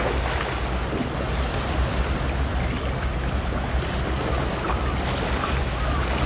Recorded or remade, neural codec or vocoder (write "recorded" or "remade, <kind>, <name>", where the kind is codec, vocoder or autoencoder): recorded